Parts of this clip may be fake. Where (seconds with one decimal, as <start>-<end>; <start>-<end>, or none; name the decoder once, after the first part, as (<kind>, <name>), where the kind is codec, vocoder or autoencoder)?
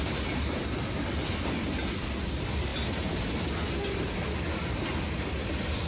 none